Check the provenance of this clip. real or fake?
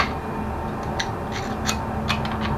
real